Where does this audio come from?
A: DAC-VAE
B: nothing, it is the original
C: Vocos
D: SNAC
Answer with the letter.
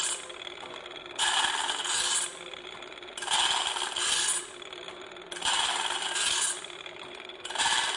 B